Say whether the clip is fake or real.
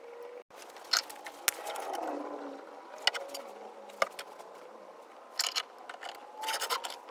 real